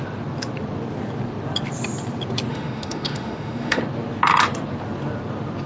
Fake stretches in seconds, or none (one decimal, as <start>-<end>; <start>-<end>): 2.5-3.8